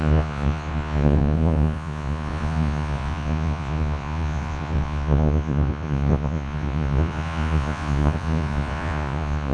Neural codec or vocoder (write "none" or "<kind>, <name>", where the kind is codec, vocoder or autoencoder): vocoder, Vocos